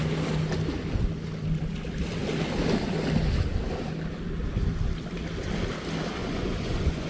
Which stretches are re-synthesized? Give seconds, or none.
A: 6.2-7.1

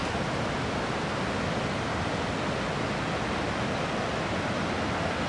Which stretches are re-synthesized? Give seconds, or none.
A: none

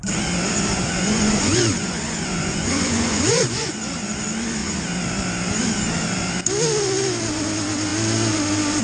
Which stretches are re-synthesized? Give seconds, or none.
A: 0.7-3.7